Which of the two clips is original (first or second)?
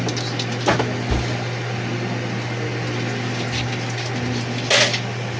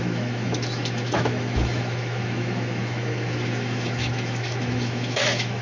first